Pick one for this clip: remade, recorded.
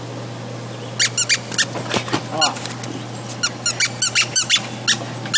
recorded